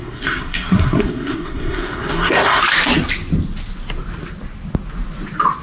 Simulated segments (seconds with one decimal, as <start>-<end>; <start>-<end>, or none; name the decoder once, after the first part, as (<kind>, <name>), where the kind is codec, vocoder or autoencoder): 0.0-2.6 (codec, SNAC)